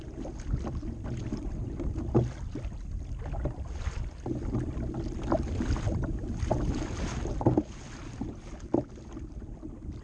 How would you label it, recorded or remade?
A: recorded